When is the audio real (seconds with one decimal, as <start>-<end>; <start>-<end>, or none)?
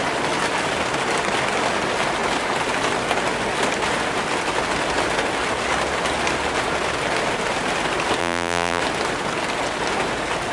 0.0-8.2; 8.8-10.5